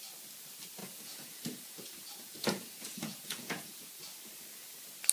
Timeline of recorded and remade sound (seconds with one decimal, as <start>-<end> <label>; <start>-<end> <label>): 0.0-0.8 recorded; 0.8-3.9 remade; 3.9-5.1 recorded